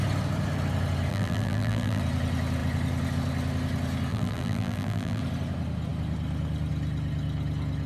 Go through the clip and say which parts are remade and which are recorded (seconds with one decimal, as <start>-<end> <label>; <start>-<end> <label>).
0.0-1.1 recorded; 1.1-2.0 remade; 2.0-4.1 recorded; 4.1-5.2 remade; 5.2-7.9 recorded